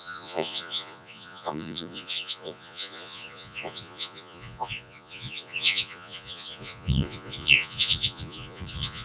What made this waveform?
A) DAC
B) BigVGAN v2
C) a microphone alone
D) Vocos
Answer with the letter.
D